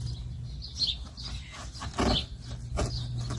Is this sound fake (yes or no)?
no